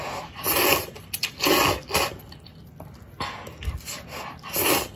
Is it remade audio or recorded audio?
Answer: recorded